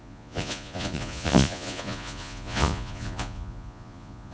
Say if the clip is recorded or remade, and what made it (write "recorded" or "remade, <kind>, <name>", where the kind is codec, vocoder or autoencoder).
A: remade, vocoder, Vocos